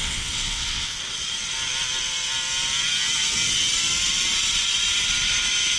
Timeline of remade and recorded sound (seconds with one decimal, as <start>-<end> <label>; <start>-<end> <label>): 0.0-1.0 remade; 1.0-5.8 recorded

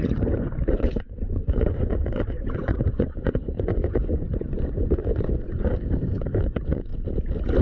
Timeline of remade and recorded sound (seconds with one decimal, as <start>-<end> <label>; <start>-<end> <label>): 0.0-5.7 remade; 5.7-6.2 recorded; 6.2-6.9 remade; 6.9-7.6 recorded

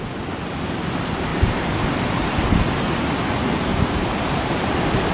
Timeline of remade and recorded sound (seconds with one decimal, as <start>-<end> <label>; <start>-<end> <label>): 0.0-1.3 recorded; 1.3-2.3 remade; 2.3-3.7 recorded; 3.7-4.6 remade; 4.6-5.1 recorded

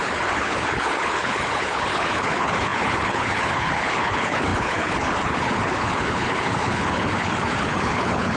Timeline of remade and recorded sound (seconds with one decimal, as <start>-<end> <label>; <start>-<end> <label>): 0.0-8.4 remade

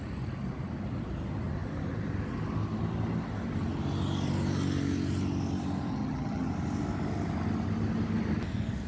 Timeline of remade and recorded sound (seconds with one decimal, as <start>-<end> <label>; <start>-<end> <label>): 0.0-5.9 recorded; 5.9-6.5 remade; 6.5-8.9 recorded

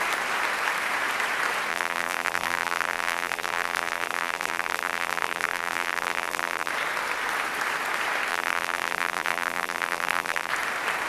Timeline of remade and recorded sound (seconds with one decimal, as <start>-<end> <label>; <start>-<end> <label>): 0.0-1.7 recorded; 1.7-6.7 remade; 6.7-8.3 recorded; 8.3-10.5 remade; 10.5-11.1 recorded

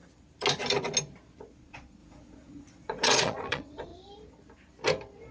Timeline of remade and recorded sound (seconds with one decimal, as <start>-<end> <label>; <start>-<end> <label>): 0.0-1.4 recorded; 1.4-3.9 remade; 3.9-5.3 recorded

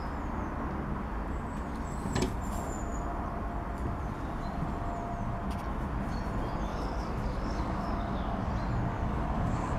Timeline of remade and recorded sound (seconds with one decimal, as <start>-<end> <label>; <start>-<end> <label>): 0.0-6.7 recorded; 6.7-8.5 remade; 8.5-8.9 recorded; 8.9-9.8 remade